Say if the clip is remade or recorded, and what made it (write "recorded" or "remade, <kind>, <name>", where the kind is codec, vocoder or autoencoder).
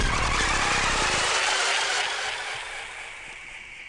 recorded